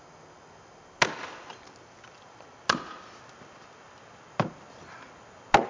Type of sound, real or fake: real